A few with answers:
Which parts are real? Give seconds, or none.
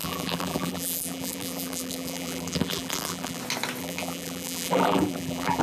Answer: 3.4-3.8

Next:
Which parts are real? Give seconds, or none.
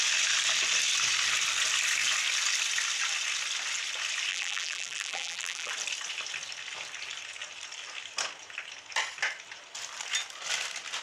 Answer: 0.0-4.3; 5.7-11.0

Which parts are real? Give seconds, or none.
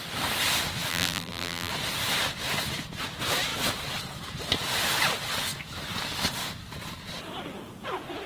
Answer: 0.0-0.9; 1.7-8.3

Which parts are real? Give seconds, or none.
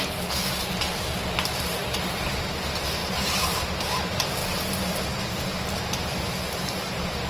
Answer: 4.4-5.2